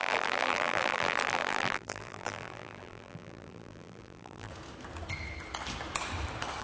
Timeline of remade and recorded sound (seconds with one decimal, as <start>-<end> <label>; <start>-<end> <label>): 0.0-4.5 remade; 4.5-6.6 recorded